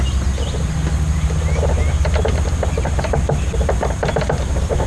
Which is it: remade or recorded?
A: recorded